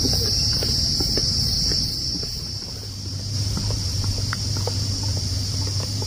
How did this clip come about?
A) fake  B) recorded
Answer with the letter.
A